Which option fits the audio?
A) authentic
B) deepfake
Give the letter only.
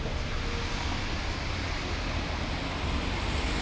A